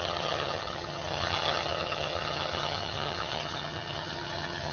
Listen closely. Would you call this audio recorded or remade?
remade